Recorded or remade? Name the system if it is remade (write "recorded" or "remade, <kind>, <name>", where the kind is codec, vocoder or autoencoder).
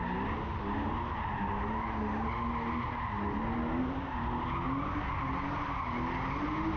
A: recorded